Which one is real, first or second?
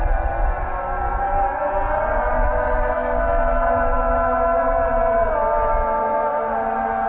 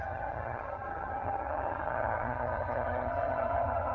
first